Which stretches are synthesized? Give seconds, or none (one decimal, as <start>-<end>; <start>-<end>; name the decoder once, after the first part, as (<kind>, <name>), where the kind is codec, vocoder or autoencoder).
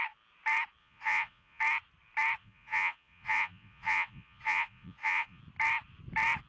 0.8-1.6 (vocoder, Vocos); 2.4-5.4